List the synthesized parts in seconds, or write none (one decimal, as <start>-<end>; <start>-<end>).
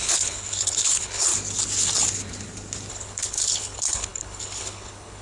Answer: 0.0-1.3; 2.9-5.2